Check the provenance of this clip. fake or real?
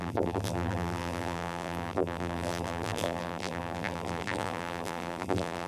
fake